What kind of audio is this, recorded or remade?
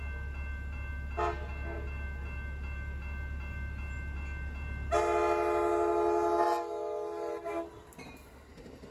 recorded